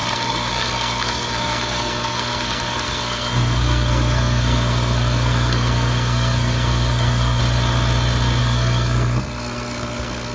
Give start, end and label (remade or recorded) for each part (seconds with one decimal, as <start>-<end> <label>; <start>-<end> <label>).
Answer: 0.0-7.4 remade; 7.4-8.4 recorded; 8.4-10.3 remade